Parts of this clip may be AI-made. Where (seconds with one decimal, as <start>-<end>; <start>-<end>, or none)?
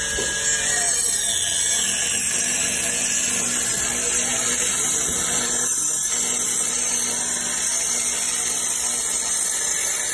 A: 4.3-5.8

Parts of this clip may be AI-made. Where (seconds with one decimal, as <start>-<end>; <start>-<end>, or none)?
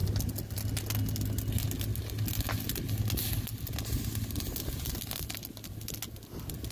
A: none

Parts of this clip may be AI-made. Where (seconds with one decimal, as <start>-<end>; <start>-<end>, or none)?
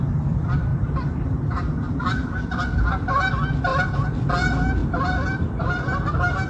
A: 0.7-3.3; 3.7-4.3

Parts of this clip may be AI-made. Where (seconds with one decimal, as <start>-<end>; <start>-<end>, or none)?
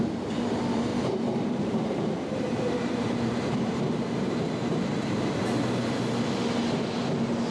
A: 0.9-5.4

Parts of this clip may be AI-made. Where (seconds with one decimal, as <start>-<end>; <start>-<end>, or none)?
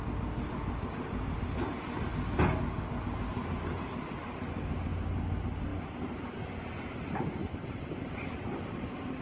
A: none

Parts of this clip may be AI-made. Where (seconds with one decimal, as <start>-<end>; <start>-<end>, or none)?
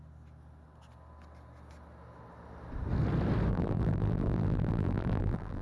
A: 3.5-5.6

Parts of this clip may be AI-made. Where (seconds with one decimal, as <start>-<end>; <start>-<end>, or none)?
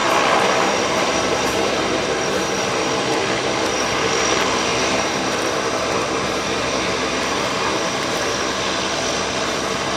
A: 0.0-4.2; 4.7-5.5; 6.0-10.0